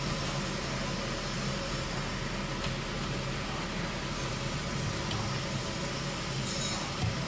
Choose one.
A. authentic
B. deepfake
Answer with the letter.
A